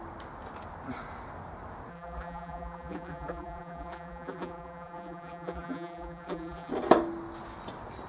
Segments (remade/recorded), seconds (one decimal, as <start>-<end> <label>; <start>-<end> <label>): 0.0-1.9 recorded; 1.9-6.7 remade; 6.7-8.1 recorded